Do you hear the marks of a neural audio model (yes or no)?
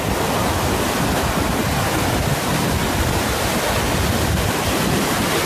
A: no